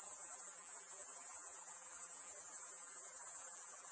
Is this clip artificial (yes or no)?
yes